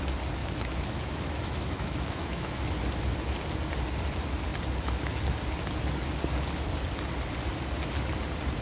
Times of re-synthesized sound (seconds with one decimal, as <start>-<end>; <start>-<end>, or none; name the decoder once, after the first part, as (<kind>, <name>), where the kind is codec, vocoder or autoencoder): 0.4-2.6 (autoencoder, DAC-VAE)